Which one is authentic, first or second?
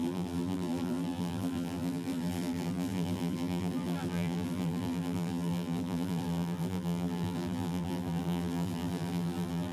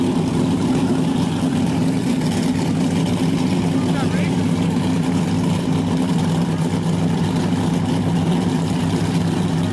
second